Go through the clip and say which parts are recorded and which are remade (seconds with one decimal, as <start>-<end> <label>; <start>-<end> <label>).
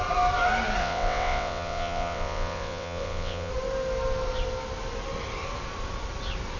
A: 0.0-0.8 recorded; 0.8-3.5 remade; 3.5-6.6 recorded